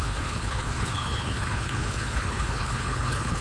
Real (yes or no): no